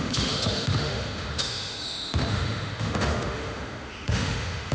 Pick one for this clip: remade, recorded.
remade